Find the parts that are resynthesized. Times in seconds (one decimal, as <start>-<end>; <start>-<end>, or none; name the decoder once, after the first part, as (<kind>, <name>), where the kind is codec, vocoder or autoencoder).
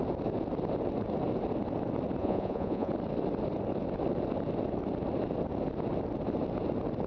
2.2-2.9 (vocoder, Vocos)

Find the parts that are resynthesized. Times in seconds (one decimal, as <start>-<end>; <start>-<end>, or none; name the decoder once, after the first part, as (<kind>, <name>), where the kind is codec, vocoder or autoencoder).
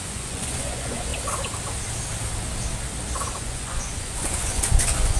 0.0-1.1 (vocoder, Vocos); 3.4-5.2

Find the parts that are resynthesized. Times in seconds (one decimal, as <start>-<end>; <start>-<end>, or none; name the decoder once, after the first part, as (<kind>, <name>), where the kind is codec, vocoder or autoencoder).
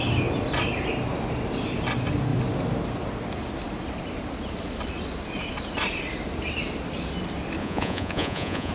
7.6-8.7 (vocoder, Vocos)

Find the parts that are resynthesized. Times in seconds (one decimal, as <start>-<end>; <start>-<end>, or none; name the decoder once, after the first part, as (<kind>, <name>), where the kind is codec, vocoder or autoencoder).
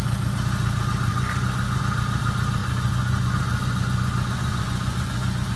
1.1-1.8 (vocoder, Vocos); 2.6-5.6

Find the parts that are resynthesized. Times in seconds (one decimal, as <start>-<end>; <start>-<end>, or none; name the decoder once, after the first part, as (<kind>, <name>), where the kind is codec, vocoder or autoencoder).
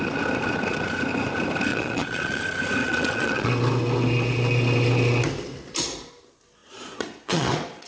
1.7-2.4 (vocoder, Vocos); 2.8-3.5; 6.6-7.9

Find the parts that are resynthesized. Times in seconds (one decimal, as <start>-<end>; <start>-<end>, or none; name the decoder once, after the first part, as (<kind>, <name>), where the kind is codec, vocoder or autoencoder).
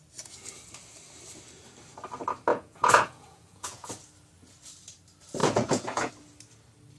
2.5-3.9 (vocoder, Vocos); 5.4-6.1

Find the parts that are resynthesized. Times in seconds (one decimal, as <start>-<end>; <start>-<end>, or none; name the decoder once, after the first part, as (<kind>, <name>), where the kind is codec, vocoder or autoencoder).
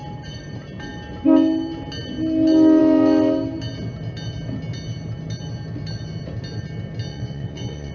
7.1-7.9 (vocoder, Vocos)